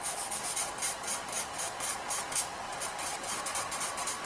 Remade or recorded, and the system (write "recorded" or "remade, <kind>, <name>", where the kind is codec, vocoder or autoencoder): recorded